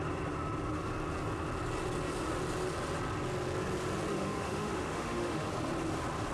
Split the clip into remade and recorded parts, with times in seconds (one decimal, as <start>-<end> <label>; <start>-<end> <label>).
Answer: 0.0-4.1 recorded; 4.1-5.5 remade; 5.5-6.3 recorded